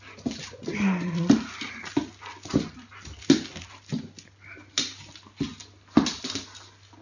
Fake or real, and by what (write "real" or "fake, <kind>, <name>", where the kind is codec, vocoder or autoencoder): real